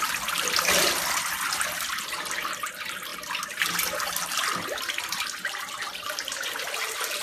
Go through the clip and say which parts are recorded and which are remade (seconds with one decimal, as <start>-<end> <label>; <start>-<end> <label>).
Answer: 0.0-7.2 recorded